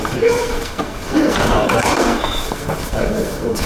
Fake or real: fake